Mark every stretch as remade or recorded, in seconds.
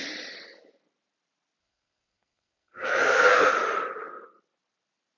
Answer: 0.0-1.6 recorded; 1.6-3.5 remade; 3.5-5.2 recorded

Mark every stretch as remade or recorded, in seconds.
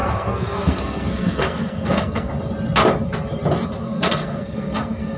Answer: 0.0-2.3 remade; 2.3-3.8 recorded; 3.8-5.2 remade